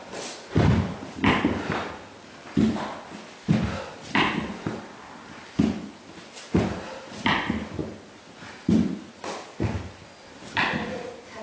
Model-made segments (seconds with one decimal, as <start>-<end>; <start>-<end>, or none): none

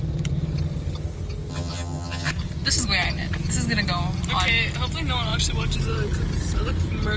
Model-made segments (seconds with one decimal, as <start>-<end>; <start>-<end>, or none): 1.5-2.3

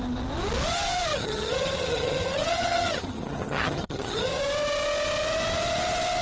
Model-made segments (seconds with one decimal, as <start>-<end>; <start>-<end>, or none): 1.1-4.4

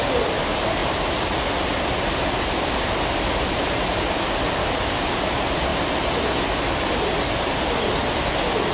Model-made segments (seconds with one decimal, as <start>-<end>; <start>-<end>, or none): none

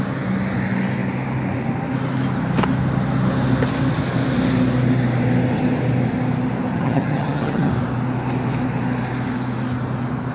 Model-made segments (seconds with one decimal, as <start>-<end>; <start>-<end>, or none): 6.7-7.7